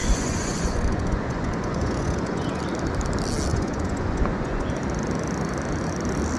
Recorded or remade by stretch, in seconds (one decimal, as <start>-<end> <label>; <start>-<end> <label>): 0.0-2.6 remade; 2.6-3.5 recorded; 3.5-4.7 remade; 4.7-6.4 recorded